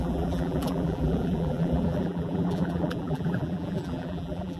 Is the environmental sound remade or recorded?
remade